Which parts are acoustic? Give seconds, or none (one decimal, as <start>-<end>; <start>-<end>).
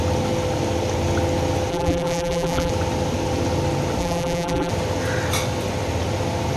0.0-1.7; 2.7-4.0; 4.7-6.6